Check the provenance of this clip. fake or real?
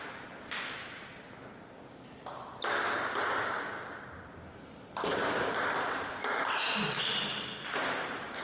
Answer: real